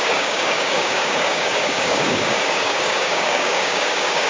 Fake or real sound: fake